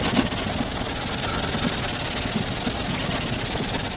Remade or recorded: recorded